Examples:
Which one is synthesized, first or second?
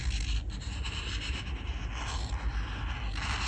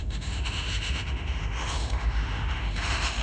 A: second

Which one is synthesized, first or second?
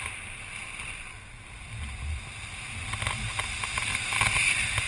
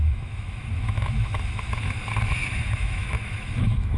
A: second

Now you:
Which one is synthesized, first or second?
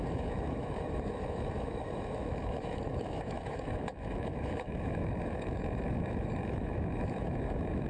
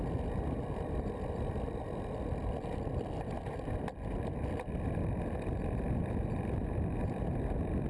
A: first